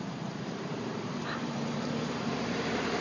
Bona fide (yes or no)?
no